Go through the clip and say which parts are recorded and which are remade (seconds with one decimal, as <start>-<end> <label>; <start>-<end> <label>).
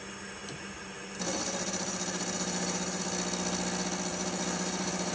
0.0-0.4 recorded; 0.4-3.0 remade; 3.0-4.1 recorded; 4.1-5.1 remade